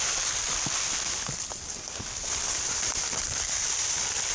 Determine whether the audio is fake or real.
real